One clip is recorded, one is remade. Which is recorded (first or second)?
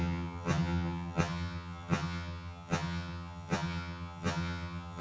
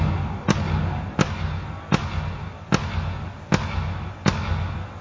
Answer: second